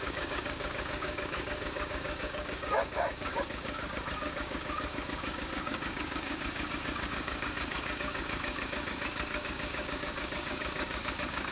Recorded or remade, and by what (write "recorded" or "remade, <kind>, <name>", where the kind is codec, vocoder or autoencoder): remade, codec, DAC